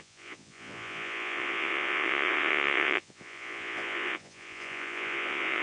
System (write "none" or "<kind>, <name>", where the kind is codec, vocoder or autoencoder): vocoder, Vocos